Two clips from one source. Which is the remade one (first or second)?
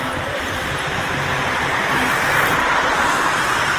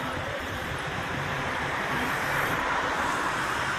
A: second